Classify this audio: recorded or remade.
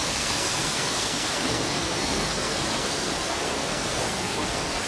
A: remade